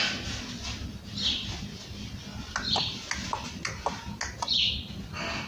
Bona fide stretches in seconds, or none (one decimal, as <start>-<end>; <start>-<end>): 0.0-5.5